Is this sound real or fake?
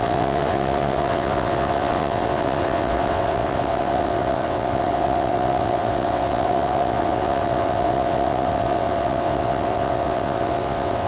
fake